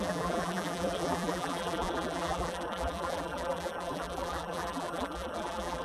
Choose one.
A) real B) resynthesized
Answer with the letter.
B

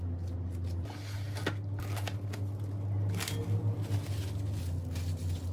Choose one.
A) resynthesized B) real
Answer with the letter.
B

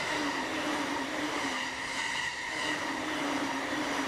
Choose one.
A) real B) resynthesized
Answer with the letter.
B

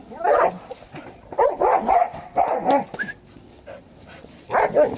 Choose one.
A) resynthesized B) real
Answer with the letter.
B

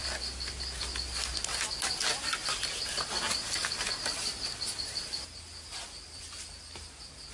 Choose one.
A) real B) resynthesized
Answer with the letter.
A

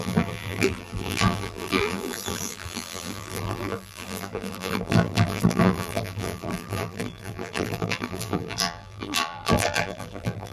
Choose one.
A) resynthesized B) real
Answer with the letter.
A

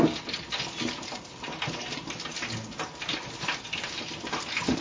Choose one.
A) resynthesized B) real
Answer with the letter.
B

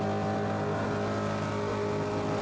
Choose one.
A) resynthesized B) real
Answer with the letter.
B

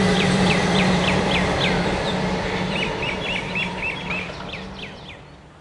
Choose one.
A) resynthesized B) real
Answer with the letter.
A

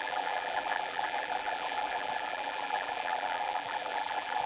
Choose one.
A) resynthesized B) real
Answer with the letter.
A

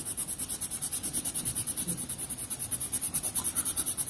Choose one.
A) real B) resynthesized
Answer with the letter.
A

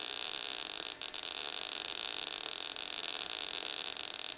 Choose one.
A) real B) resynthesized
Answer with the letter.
A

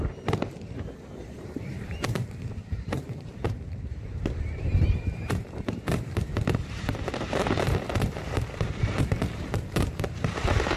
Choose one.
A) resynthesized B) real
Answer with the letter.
A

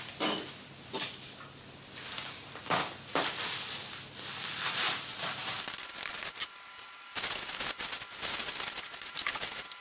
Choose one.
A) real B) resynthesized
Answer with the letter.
A